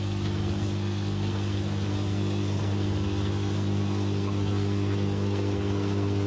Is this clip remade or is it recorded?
remade